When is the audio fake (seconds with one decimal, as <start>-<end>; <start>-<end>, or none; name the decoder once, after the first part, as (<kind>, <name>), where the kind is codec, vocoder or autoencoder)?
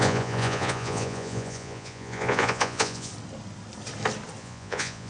0.0-3.1 (vocoder, Vocos); 4.4-5.1